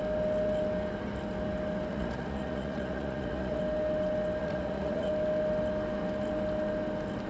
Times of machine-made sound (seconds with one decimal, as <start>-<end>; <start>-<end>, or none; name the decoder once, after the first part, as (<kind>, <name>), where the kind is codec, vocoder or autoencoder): 1.9-3.6 (vocoder, Vocos); 4.4-5.1